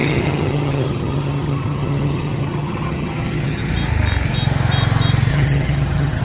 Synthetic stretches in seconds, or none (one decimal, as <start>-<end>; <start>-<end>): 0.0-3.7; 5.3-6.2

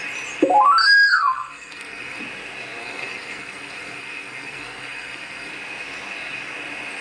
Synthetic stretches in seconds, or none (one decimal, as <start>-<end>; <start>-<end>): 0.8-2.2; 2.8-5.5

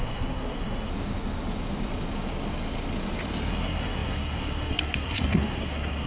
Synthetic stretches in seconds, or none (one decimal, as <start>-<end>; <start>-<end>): 0.0-0.9; 3.5-6.1

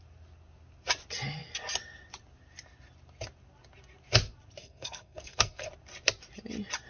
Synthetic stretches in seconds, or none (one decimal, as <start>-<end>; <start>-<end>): 4.6-5.7